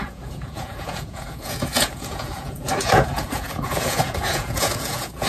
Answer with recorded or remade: remade